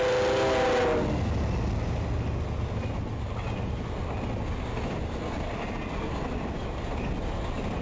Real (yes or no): yes